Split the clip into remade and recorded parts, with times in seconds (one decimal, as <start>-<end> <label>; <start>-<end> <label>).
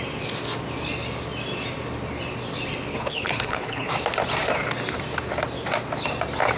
0.0-2.9 recorded; 2.9-3.9 remade; 3.9-6.6 recorded